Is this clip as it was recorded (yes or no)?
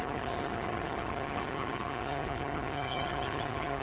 no